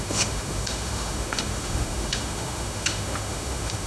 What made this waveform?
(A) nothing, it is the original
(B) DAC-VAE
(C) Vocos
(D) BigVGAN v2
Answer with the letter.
B